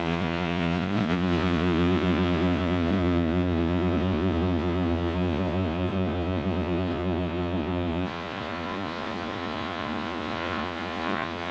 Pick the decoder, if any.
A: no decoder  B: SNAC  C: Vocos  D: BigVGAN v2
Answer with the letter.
C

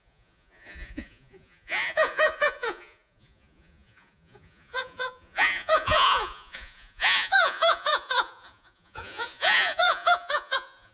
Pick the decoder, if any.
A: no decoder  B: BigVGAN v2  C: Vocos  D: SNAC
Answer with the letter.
C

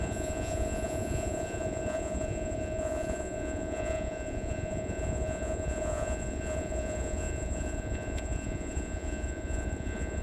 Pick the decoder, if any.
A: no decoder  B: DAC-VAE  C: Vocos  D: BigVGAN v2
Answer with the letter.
C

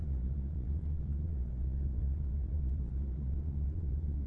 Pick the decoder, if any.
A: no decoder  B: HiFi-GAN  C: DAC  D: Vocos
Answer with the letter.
D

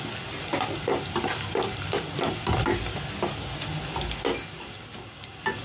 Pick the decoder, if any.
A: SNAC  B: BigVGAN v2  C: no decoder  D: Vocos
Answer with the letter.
C